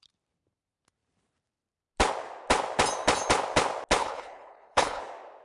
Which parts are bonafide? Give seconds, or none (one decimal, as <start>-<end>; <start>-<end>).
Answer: 0.0-4.0; 5.0-5.4